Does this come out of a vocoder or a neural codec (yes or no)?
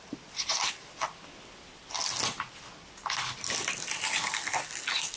no